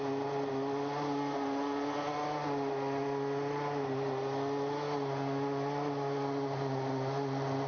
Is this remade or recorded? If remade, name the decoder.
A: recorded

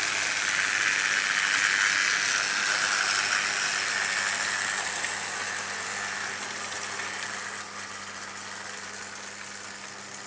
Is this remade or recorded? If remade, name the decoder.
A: recorded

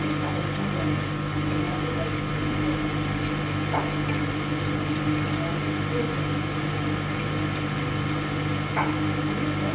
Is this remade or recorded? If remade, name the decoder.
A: recorded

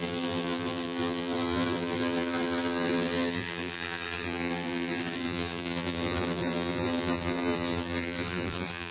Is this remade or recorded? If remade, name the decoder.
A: remade, vocoder, BigVGAN v2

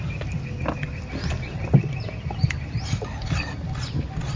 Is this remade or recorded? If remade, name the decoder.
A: recorded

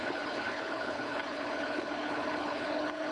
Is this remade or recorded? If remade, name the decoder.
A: remade, codec, HILCodec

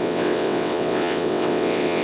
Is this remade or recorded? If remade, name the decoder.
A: remade, vocoder, WaveNeXt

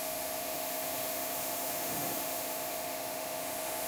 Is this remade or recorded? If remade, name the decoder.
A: remade, autoencoder, DAC-VAE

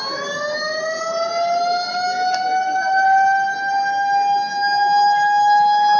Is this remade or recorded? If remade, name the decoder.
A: recorded